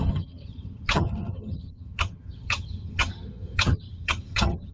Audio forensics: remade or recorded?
remade